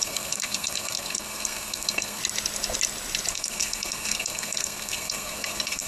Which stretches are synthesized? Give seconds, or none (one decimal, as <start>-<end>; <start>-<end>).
0.0-2.2; 3.3-5.9